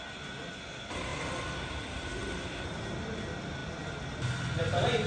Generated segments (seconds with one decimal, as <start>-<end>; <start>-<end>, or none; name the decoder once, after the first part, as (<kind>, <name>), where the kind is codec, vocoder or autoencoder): none